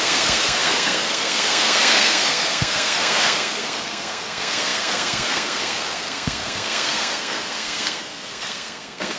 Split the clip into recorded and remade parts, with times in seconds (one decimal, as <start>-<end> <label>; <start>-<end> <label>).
0.0-9.2 remade